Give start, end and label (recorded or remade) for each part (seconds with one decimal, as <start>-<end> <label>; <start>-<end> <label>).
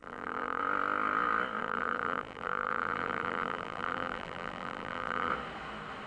0.0-0.6 remade; 0.6-1.6 recorded; 1.6-5.3 remade; 5.3-6.1 recorded